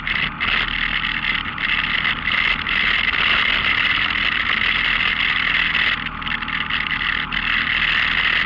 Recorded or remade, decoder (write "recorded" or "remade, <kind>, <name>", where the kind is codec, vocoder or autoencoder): recorded